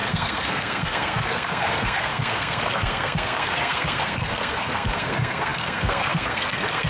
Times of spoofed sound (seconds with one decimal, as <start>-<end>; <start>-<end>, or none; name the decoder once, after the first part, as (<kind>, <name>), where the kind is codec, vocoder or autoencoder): 0.0-6.9 (codec, SNAC)